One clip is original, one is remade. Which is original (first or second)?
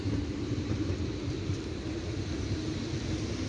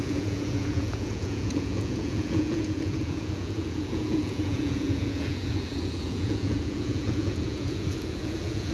first